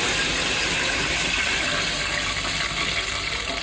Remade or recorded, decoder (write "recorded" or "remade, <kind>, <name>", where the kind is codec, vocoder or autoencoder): recorded